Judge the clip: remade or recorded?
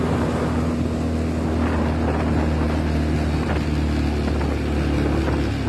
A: recorded